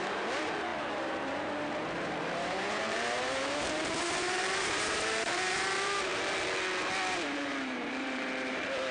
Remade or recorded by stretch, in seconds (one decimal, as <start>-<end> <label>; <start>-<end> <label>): 0.0-6.1 remade; 6.1-7.1 recorded; 7.1-8.9 remade

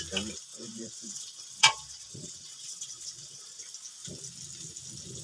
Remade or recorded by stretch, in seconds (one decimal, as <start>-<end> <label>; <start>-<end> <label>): 0.0-0.5 recorded; 0.5-3.6 remade; 3.6-5.2 recorded

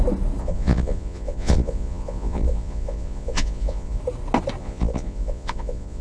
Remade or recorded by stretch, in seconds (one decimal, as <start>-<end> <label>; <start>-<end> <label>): 0.0-0.4 recorded; 0.4-4.0 remade; 4.0-4.6 recorded; 4.6-6.0 remade

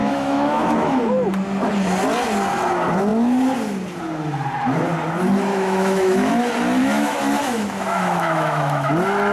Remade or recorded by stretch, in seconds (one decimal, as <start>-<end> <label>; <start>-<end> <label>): 0.0-1.0 remade; 1.0-5.5 recorded; 5.5-6.3 remade; 6.3-6.8 recorded; 6.8-8.9 remade; 8.9-9.3 recorded

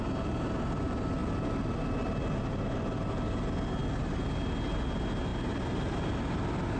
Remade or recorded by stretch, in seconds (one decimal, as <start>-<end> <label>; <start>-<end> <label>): 0.0-6.8 recorded

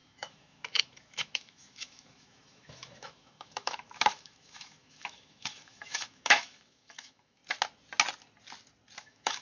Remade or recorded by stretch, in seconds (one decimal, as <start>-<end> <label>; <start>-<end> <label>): 0.0-7.4 remade; 7.4-9.0 recorded; 9.0-9.4 remade